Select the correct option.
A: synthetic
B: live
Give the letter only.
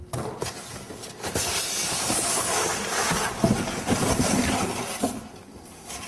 B